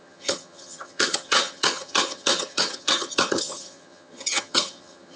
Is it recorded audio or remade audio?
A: remade